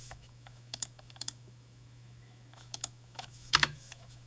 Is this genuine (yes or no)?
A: no